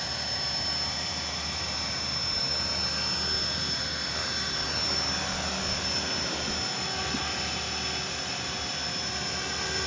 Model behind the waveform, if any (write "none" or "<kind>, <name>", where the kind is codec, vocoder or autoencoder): none